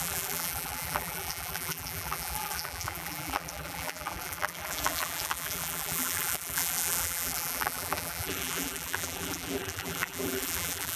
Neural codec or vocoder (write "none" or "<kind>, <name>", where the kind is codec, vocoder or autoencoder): vocoder, BigVGAN v2